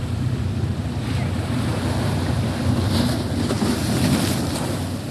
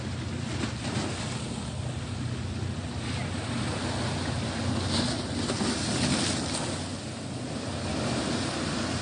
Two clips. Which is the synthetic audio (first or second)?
first